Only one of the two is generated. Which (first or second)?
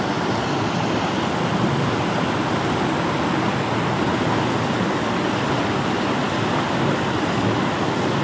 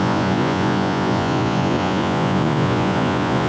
second